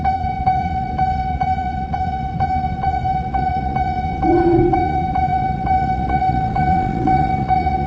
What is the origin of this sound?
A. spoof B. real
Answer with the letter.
A